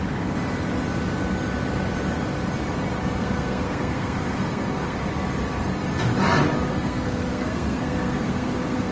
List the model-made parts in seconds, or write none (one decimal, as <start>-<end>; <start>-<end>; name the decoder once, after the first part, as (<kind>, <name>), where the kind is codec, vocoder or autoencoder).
3.0-5.1 (codec, SNAC); 6.7-8.9